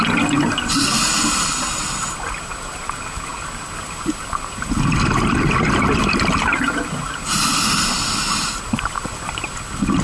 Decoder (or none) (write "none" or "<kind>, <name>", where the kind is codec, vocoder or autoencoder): none